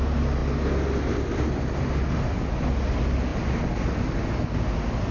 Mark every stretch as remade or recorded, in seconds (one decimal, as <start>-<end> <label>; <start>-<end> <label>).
0.0-5.1 recorded